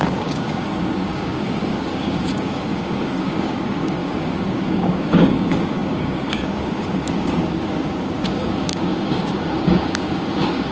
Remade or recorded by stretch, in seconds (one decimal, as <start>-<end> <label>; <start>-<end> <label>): 0.0-10.7 remade